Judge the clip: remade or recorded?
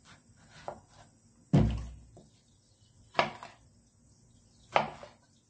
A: recorded